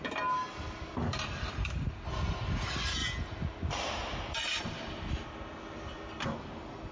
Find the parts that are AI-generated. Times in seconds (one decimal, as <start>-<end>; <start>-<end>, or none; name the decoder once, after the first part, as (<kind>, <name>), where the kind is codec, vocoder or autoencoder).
3.0-5.3 (vocoder, BigVGAN v2)